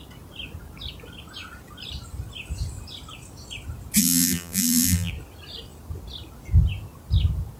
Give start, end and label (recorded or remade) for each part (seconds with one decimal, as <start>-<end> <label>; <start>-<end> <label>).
0.0-4.0 recorded; 4.0-5.1 remade; 5.1-7.6 recorded